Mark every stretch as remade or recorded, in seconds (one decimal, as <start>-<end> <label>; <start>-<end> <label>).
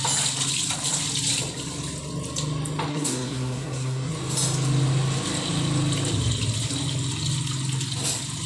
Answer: 0.0-2.9 recorded; 2.9-4.1 remade; 4.1-8.5 recorded